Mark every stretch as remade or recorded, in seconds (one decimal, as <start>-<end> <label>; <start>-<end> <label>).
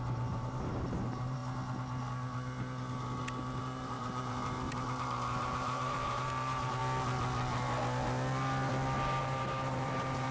0.0-1.4 remade; 1.4-3.6 recorded; 3.6-6.8 remade; 6.8-9.2 recorded; 9.2-10.3 remade